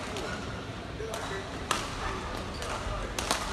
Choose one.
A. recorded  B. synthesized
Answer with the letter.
A